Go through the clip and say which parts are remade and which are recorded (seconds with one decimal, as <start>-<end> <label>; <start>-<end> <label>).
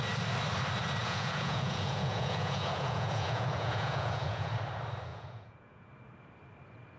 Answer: 0.0-1.0 recorded; 1.0-4.5 remade; 4.5-5.1 recorded; 5.1-5.9 remade; 5.9-7.0 recorded